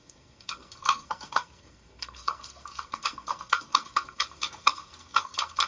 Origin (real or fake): fake